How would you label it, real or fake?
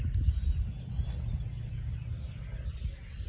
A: real